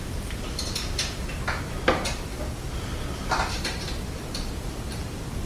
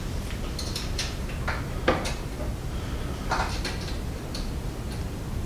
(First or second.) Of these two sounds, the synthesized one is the first